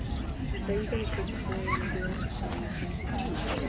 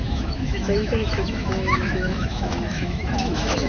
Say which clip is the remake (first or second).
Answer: second